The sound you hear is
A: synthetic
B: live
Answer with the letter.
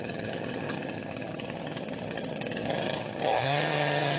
A